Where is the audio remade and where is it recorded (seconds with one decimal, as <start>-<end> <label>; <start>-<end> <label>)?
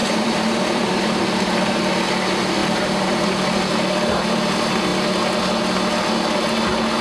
0.0-1.8 remade; 1.8-2.6 recorded; 2.6-3.6 remade; 3.6-7.0 recorded